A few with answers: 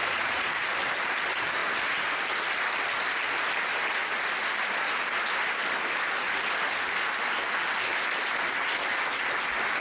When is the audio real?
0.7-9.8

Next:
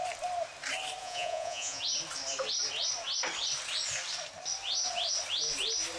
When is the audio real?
0.0-1.0; 1.8-6.0

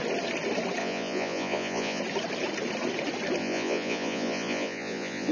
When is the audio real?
0.0-0.8; 2.0-3.4

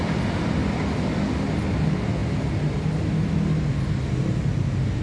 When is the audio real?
0.0-5.0

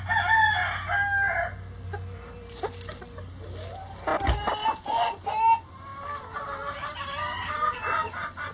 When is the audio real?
0.0-8.5